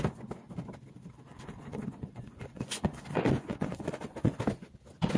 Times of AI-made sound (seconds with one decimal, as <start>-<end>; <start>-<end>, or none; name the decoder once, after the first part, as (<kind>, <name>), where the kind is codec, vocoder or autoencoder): 1.3-4.4 (vocoder, Vocos)

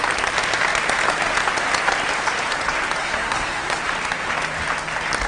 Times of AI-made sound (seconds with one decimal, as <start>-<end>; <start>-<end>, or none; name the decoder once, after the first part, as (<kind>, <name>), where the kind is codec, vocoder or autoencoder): 3.0-3.8 (codec, SNAC)

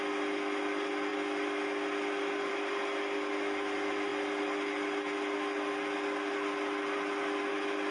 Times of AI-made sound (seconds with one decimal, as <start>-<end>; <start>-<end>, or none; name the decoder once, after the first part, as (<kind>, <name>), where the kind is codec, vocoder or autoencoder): none

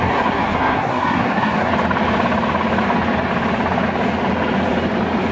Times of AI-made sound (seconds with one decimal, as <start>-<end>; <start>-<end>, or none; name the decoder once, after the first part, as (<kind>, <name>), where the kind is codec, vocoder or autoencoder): 0.0-1.7 (codec, SNAC)

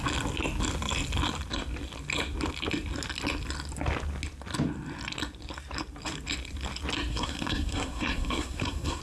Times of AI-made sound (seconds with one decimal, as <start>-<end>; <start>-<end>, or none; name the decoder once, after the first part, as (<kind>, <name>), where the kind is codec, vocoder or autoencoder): 7.1-9.0 (codec, SNAC)

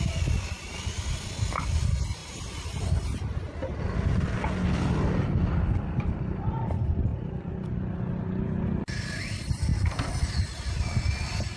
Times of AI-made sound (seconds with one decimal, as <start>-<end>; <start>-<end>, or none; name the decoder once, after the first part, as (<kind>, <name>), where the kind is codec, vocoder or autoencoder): none

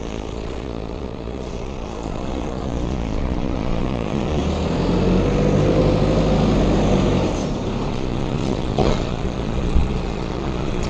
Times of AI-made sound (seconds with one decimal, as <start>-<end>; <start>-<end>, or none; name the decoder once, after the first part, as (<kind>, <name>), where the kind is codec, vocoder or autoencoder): 0.0-4.4 (vocoder, Vocos); 7.9-10.9